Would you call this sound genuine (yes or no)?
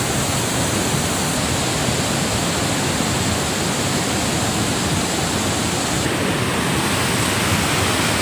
yes